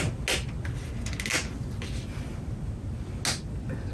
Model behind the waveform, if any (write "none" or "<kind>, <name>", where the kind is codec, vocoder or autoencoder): none